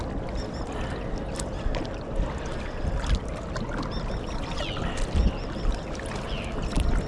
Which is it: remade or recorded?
recorded